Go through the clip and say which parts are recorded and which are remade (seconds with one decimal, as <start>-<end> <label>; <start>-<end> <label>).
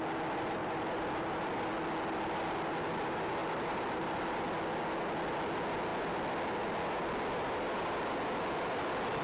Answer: 0.0-0.6 recorded; 0.6-1.6 remade; 1.6-3.4 recorded; 3.4-4.4 remade; 4.4-9.2 recorded